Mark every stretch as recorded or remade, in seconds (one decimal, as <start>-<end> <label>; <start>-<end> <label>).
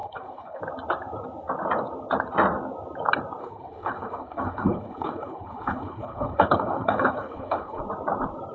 0.0-0.6 remade; 0.6-3.4 recorded; 3.4-7.8 remade; 7.8-8.5 recorded